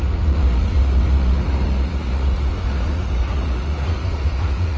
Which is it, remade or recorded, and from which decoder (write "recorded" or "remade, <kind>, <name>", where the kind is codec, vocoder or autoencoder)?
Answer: remade, vocoder, Vocos